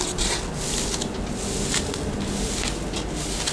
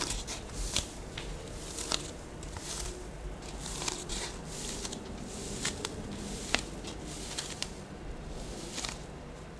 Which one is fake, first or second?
second